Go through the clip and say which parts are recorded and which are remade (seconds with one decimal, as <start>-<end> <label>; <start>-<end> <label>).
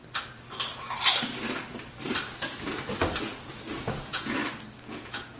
0.0-3.2 recorded; 3.2-4.4 remade; 4.4-4.9 recorded; 4.9-5.4 remade